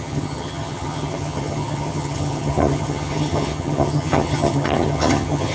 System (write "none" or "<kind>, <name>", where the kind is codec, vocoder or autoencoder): vocoder, HiFi-GAN